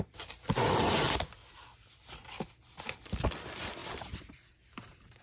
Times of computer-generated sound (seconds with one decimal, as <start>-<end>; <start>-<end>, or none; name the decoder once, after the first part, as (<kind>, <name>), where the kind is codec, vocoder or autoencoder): 3.8-5.2 (vocoder, BigVGAN v2)